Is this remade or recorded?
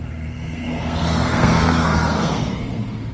remade